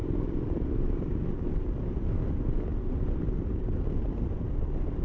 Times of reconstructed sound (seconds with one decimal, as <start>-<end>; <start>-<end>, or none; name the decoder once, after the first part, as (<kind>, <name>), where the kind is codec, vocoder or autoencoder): 0.0-2.3 (vocoder, BigVGAN v2)